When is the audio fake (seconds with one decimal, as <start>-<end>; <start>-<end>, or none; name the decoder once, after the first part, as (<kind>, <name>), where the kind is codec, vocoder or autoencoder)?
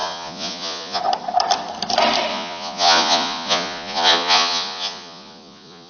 0.0-1.0 (vocoder, Vocos); 2.3-5.9